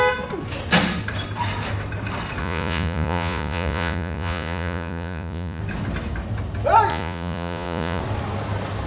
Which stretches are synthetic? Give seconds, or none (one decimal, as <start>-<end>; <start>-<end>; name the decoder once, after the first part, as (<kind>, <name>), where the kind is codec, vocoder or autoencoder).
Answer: 2.4-5.6 (vocoder, Vocos); 6.9-8.0